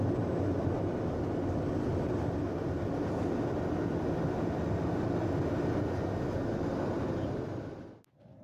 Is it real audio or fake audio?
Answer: real